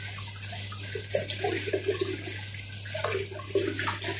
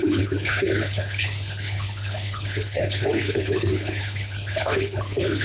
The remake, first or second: second